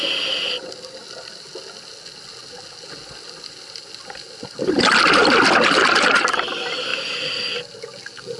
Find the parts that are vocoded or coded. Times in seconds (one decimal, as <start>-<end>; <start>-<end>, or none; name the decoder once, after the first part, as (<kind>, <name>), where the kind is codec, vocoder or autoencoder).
none